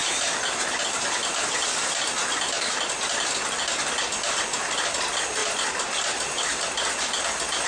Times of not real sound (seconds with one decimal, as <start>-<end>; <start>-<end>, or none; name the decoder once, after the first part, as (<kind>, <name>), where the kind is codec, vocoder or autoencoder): none